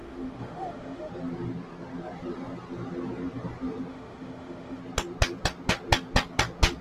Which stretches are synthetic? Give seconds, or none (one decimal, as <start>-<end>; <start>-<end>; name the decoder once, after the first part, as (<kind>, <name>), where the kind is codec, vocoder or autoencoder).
0.0-1.1 (autoencoder, DAC-VAE); 3.9-4.8